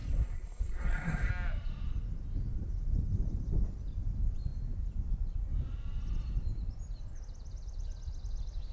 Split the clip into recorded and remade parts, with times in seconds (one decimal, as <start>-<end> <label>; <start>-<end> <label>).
0.0-1.3 remade; 1.3-8.7 recorded